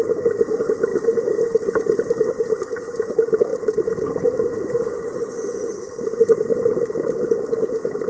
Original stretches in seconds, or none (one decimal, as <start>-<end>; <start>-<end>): 0.0-0.9; 3.1-3.5; 7.3-8.1